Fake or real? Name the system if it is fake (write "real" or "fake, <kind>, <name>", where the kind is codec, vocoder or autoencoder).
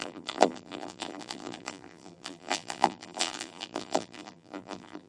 fake, vocoder, BigVGAN v2